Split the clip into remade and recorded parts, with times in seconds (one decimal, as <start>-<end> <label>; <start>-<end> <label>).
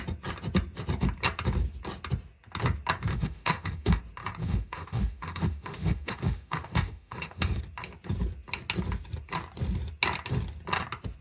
0.0-3.1 recorded; 3.1-4.0 remade; 4.0-4.4 recorded; 4.4-7.6 remade; 7.6-11.2 recorded